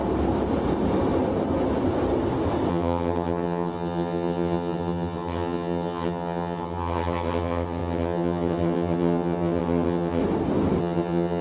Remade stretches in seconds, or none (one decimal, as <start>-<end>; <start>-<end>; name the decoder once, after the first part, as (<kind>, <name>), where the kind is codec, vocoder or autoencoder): 2.7-10.2 (vocoder, HiFi-GAN); 10.8-11.4